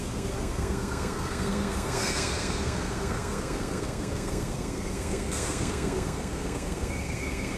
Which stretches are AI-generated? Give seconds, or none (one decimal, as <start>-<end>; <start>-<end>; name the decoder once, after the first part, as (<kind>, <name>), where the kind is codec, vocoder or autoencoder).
0.0-7.6 (codec, SNAC)